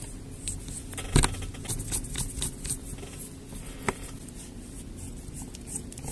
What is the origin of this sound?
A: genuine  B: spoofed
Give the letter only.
A